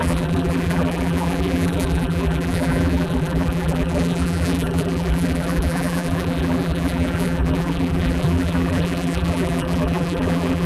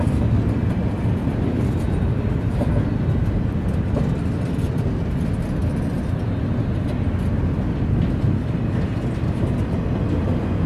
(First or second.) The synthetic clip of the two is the first